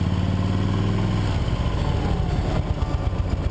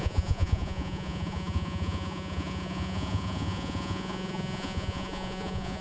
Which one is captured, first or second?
first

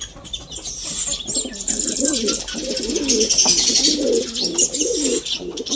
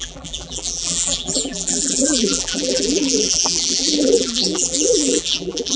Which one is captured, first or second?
first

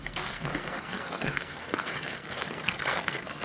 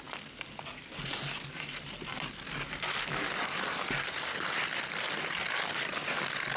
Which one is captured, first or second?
second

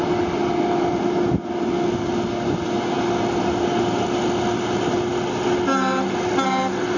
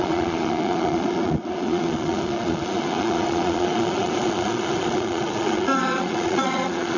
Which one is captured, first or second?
first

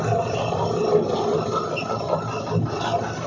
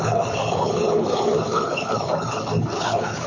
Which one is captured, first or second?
first